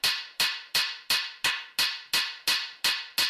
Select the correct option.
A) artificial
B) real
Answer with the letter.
B